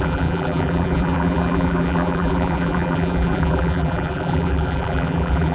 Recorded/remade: remade